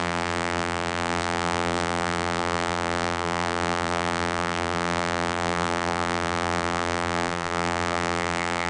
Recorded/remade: remade